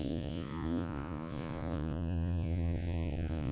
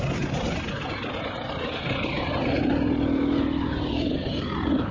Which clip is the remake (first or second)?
first